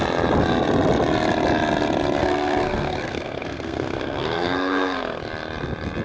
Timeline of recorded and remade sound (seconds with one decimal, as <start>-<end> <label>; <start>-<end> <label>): 0.0-2.2 recorded; 2.2-5.2 remade; 5.2-6.0 recorded